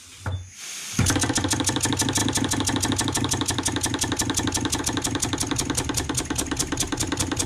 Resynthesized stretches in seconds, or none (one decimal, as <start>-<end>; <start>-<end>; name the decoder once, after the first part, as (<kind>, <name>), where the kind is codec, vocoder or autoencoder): none